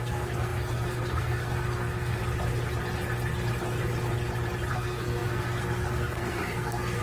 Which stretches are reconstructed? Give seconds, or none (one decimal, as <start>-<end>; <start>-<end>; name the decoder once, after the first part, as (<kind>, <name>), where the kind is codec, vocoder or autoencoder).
0.0-2.2 (codec, SNAC); 4.7-7.0